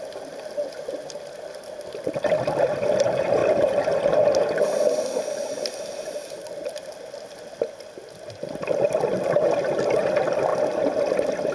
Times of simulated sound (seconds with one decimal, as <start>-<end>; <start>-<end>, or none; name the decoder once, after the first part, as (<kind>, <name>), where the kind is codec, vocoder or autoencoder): none